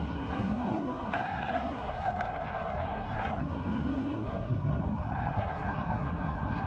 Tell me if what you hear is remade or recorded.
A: remade